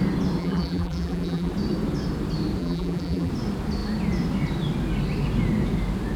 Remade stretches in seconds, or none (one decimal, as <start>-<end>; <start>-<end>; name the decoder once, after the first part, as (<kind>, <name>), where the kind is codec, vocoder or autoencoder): 0.4-1.5 (vocoder, BigVGAN v2); 2.6-3.3